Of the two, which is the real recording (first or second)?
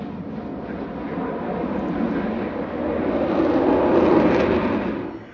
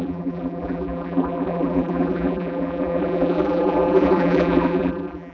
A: first